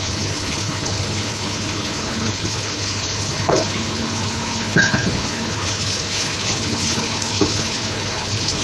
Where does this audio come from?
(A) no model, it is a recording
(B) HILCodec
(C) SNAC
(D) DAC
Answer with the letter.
B